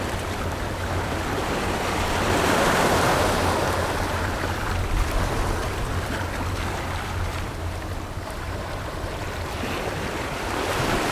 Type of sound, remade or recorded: remade